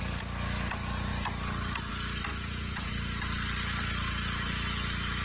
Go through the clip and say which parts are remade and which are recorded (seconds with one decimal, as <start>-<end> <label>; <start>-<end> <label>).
0.0-2.3 recorded; 2.3-2.9 remade; 2.9-5.2 recorded